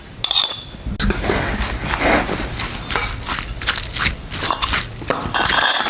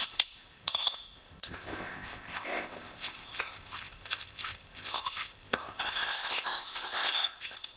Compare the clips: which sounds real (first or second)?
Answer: first